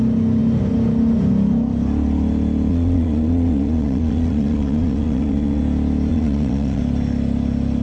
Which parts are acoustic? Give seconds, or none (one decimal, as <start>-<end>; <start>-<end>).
0.0-2.7; 5.6-6.1; 6.8-7.8